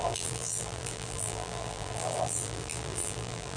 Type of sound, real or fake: fake